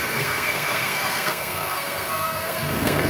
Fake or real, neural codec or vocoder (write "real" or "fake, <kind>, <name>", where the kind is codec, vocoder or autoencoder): fake, codec, SNAC